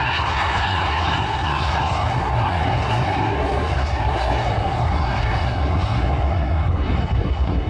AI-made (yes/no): yes